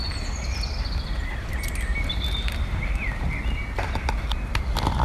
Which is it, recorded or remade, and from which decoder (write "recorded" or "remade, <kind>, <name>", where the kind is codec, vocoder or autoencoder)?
recorded